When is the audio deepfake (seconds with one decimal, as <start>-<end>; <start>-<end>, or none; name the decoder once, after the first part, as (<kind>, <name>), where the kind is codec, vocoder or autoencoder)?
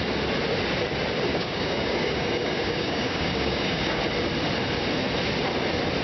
1.3-4.0 (codec, DAC)